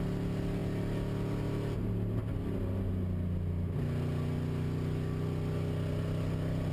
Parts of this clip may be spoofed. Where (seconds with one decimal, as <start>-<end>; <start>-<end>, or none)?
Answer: none